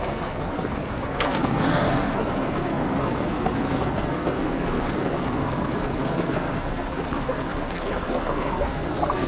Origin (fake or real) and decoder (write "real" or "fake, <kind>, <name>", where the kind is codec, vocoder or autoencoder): fake, codec, SNAC